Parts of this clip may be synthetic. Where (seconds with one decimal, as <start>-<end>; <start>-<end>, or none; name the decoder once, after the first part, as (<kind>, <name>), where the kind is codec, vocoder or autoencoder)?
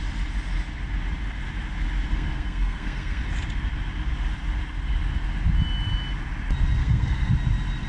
2.1-3.2 (codec, SNAC); 6.8-7.3